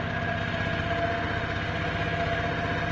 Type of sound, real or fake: real